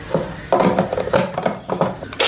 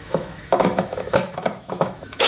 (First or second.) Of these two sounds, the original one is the first